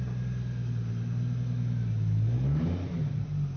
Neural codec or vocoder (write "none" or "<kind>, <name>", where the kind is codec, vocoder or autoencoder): none